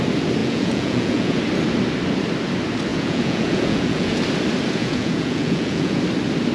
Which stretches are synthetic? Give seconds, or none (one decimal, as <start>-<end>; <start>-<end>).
0.4-1.4; 2.9-4.2; 4.8-6.0